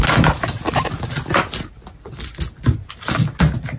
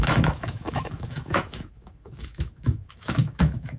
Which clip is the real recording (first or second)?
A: first